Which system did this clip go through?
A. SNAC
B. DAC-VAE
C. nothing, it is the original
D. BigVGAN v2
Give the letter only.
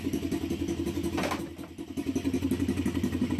C